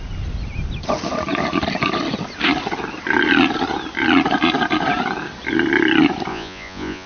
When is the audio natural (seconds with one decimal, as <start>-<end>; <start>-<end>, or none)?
0.0-6.3

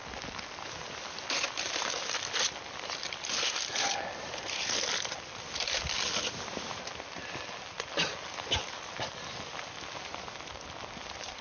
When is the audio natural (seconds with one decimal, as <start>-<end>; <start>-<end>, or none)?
0.0-11.4

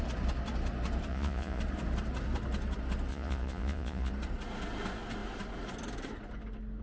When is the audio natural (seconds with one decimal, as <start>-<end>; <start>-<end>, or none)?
0.0-1.1; 1.6-3.1; 4.1-6.8